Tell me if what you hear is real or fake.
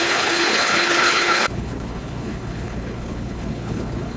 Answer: fake